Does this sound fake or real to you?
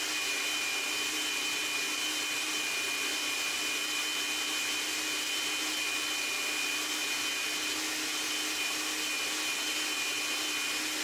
real